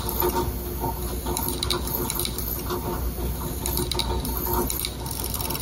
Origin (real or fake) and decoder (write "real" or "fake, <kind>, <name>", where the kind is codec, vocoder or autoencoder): real